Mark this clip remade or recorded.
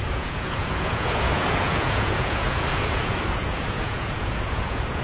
remade